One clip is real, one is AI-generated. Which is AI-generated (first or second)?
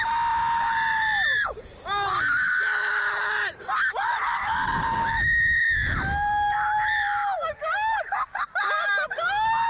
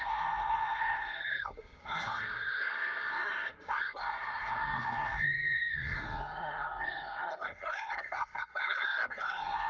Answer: second